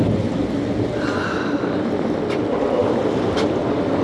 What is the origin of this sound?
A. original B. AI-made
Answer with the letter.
A